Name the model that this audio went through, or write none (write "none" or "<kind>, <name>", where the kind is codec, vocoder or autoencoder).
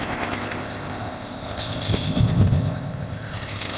codec, ZipCodec